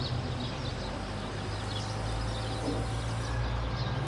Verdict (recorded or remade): recorded